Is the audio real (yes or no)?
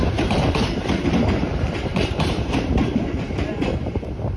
no